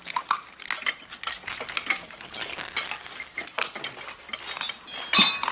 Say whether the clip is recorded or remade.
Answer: recorded